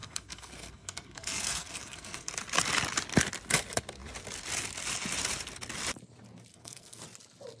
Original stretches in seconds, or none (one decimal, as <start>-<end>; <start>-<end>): 2.3-6.5; 7.0-7.6